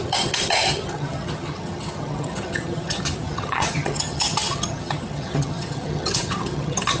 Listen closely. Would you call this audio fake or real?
fake